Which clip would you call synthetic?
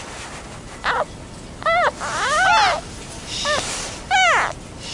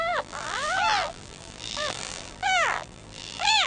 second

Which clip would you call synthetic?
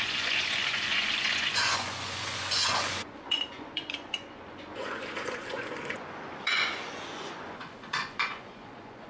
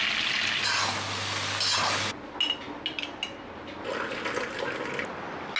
first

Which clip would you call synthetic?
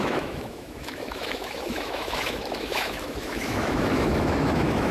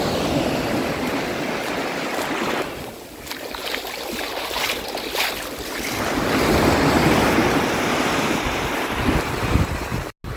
first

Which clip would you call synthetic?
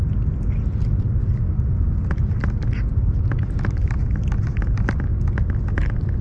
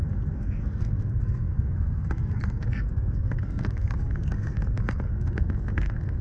second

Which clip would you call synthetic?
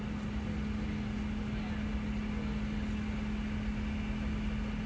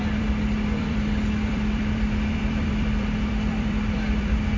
second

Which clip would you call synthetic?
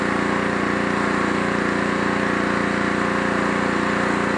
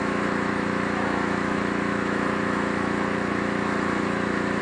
second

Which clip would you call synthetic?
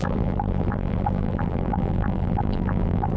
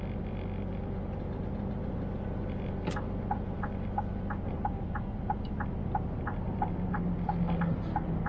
first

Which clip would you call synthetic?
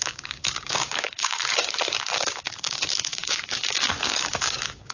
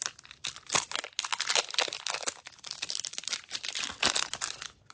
first